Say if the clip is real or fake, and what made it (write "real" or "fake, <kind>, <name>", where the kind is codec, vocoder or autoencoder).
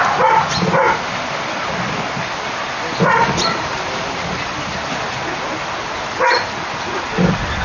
real